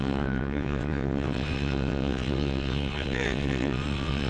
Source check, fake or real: fake